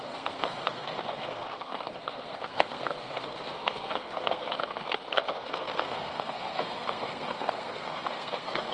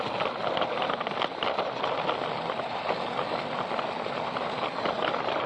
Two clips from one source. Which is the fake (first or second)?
first